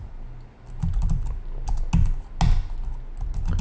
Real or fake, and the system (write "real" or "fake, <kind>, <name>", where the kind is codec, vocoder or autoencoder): real